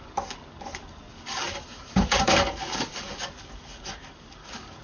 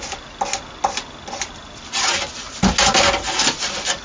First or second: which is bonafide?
second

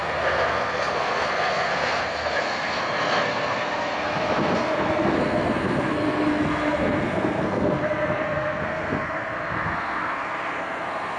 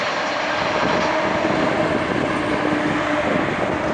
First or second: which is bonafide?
second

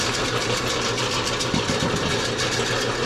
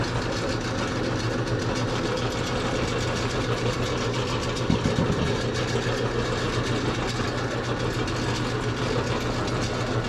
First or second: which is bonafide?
second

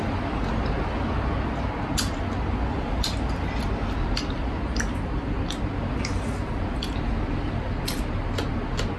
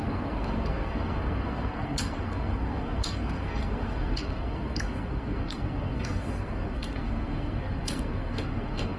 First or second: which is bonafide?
first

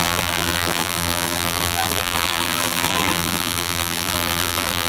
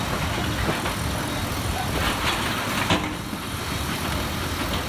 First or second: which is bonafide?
second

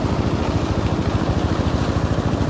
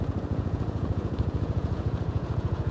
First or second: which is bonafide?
first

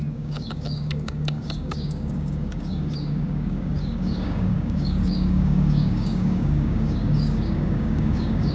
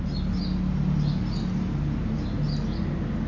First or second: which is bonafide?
second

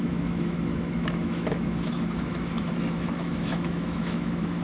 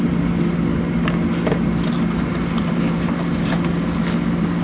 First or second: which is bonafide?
second